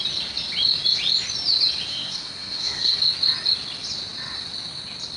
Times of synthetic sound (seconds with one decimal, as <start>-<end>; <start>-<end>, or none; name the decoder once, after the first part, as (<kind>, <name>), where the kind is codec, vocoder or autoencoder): 1.9-3.0 (codec, SNAC)